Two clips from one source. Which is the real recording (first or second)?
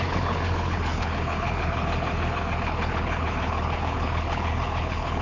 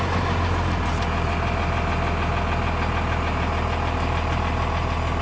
second